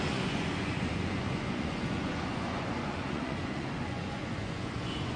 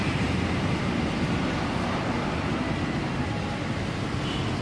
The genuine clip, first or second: second